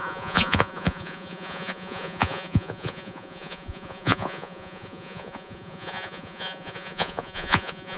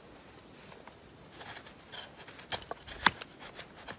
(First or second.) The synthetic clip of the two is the first